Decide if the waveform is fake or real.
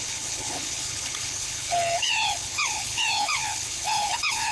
fake